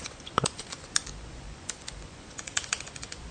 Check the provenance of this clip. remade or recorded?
remade